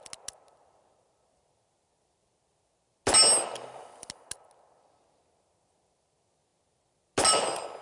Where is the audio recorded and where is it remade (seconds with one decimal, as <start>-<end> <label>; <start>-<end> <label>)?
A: 0.0-7.8 recorded